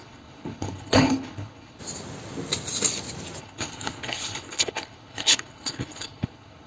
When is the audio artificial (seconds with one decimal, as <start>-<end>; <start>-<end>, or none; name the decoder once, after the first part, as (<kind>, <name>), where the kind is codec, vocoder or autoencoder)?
0.0-1.8 (codec, HILCodec); 3.4-6.7